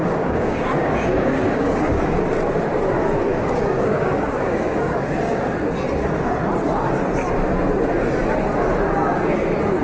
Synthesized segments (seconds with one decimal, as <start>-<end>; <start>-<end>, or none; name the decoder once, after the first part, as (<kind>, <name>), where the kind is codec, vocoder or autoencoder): 0.0-2.2 (codec, DAC); 3.3-5.5